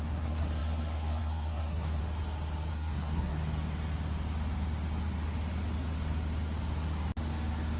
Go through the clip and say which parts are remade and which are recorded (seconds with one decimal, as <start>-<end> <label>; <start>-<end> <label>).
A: 0.0-2.0 remade; 2.0-2.7 recorded; 2.7-3.3 remade; 3.3-7.8 recorded